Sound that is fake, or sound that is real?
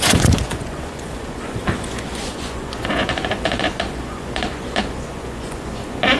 fake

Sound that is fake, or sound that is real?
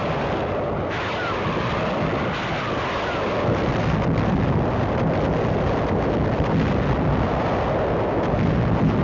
real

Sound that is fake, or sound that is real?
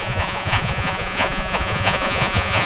fake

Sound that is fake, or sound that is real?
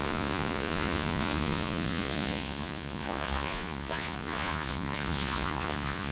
fake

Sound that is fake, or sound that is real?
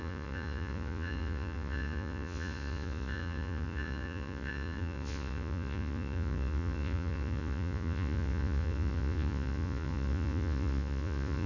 fake